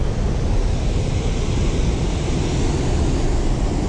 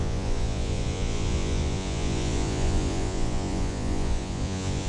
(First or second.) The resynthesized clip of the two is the second